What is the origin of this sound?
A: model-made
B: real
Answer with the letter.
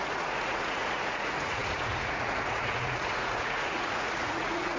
A